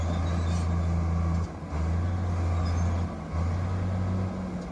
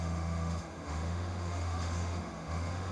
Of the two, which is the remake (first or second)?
second